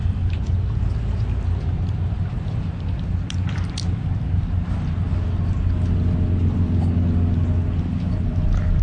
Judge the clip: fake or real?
real